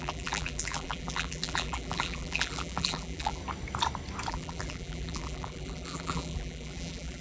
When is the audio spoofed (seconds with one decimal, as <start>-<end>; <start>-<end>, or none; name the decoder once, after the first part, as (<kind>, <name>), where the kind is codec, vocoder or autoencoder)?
0.0-3.4 (vocoder, BigVGAN v2); 4.3-7.2